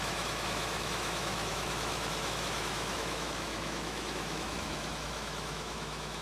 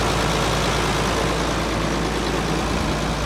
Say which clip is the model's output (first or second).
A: first